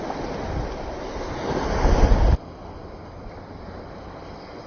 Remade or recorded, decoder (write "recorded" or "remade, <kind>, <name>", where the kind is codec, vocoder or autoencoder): recorded